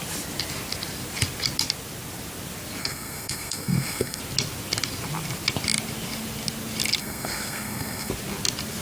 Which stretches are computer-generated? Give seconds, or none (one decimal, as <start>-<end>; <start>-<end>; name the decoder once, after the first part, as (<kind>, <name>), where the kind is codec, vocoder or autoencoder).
2.8-4.2 (codec, SNAC); 7.0-8.1